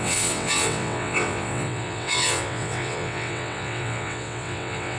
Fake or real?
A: fake